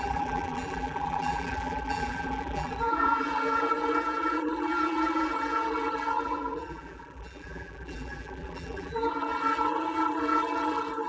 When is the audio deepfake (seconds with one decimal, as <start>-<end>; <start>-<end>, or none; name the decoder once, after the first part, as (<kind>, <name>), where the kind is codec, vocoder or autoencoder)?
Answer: 0.0-11.1 (vocoder, BigVGAN v2)